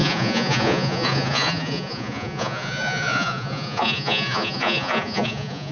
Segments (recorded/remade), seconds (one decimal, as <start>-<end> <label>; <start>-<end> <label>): 0.0-5.7 remade